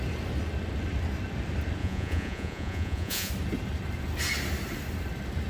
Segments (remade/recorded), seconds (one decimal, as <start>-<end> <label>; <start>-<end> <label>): 0.0-1.8 recorded; 1.8-3.3 remade; 3.3-5.5 recorded